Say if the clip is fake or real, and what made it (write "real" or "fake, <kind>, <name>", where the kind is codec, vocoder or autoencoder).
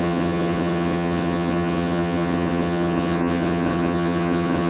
fake, vocoder, HiFi-GAN